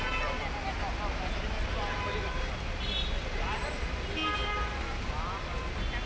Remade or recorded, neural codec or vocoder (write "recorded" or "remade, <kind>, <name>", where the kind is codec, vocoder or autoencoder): recorded